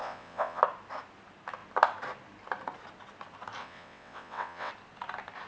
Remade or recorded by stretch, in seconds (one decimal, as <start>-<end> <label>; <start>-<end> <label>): 0.0-0.6 remade; 0.6-3.6 recorded; 3.6-4.7 remade; 4.7-5.5 recorded